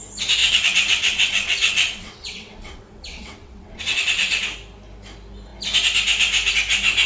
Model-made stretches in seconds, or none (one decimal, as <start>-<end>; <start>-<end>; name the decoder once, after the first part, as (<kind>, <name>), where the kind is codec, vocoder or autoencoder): 0.4-4.4 (vocoder, WaveNeXt)